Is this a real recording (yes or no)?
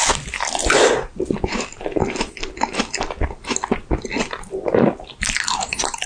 yes